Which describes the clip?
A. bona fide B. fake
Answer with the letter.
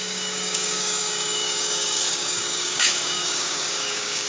B